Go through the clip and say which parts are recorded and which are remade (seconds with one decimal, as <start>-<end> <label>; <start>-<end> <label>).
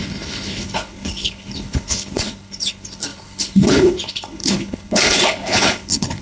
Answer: 0.0-6.2 remade